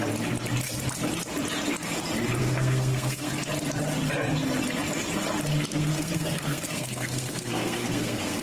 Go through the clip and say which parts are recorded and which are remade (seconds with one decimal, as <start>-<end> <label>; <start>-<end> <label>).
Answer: 0.0-2.4 recorded; 2.4-3.3 remade; 3.3-5.7 recorded; 5.7-8.4 remade